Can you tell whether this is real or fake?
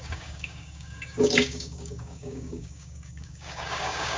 fake